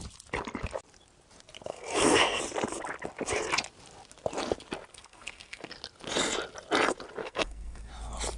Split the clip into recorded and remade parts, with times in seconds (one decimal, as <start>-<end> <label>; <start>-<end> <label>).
0.0-1.7 recorded; 1.7-2.4 remade; 2.4-4.9 recorded; 4.9-5.7 remade; 5.7-7.2 recorded; 7.2-7.9 remade; 7.9-8.4 recorded